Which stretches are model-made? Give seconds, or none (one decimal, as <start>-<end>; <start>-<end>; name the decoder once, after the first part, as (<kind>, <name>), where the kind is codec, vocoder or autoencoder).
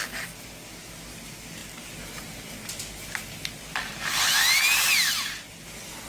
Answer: 3.8-4.6 (vocoder, BigVGAN v2)